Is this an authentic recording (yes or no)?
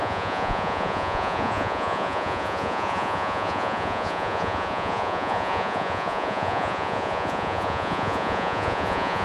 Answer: no